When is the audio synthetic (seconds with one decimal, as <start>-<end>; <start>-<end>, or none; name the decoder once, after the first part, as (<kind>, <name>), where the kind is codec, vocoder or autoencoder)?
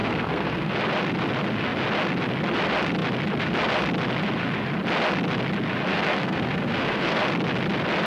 0.0-0.7 (codec, SNAC); 5.9-7.2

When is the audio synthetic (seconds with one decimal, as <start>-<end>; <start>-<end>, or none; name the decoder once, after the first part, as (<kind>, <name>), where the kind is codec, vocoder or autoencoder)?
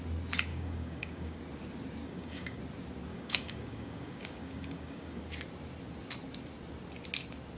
0.5-1.4 (codec, DAC); 2.0-2.6; 3.1-5.2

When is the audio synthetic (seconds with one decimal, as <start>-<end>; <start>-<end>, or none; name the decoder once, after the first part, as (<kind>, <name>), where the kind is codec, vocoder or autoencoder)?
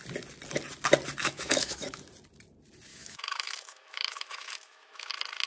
1.2-2.0 (autoencoder, DAC-VAE); 2.9-5.1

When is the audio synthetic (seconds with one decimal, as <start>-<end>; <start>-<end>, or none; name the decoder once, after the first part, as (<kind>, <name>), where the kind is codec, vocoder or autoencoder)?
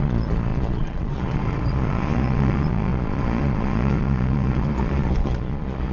0.0-5.9 (vocoder, Vocos)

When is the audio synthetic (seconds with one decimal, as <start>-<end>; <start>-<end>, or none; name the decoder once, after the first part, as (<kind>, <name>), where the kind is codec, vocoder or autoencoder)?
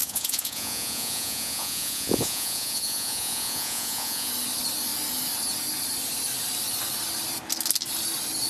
0.0-4.3 (vocoder, Vocos)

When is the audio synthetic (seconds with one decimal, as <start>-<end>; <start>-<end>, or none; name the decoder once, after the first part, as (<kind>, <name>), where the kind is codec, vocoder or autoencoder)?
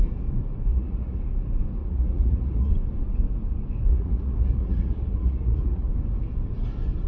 0.7-1.2 (vocoder, Vocos); 1.8-2.7; 3.9-5.9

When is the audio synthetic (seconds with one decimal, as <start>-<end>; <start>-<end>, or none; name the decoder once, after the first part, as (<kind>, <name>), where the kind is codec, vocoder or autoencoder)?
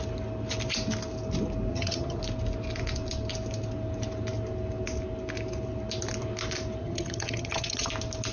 1.7-2.2 (vocoder, HiFi-GAN); 6.8-7.9